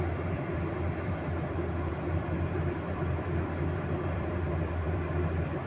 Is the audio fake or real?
fake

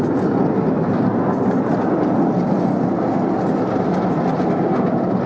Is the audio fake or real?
real